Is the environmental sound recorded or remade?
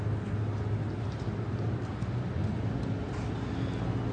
recorded